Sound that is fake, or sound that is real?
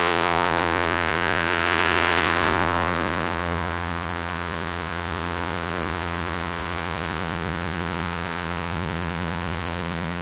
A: fake